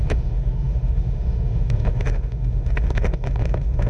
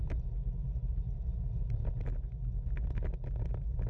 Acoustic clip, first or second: second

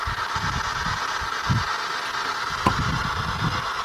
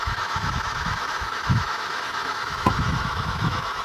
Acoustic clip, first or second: first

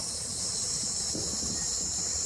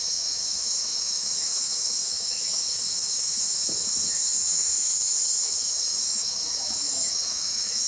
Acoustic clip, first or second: first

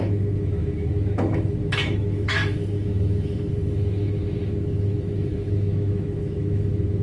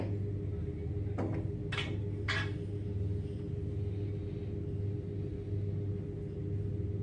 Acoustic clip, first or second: second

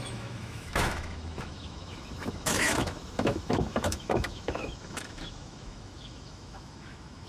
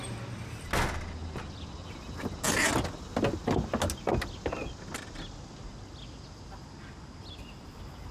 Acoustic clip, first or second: second